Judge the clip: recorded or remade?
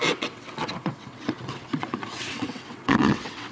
remade